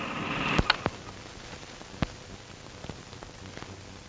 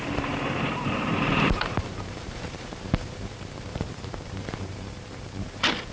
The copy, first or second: second